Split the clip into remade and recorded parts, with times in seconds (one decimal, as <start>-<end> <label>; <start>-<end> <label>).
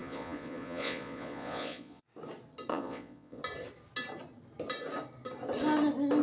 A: 0.0-2.0 remade; 2.0-2.7 recorded; 2.7-3.4 remade; 3.4-6.2 recorded